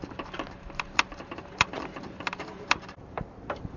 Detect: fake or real fake